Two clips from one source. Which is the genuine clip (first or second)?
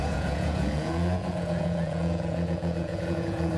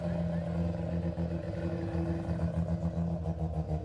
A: second